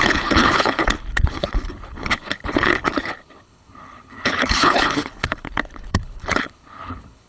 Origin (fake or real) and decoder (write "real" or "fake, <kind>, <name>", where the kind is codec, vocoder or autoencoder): fake, codec, HILCodec